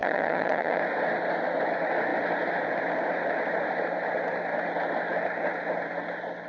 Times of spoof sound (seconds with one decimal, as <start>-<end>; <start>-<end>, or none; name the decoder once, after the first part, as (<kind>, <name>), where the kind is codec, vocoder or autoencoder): 0.0-0.8 (vocoder, HiFi-GAN)